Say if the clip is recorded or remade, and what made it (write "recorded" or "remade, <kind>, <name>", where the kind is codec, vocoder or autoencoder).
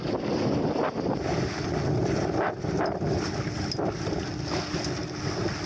recorded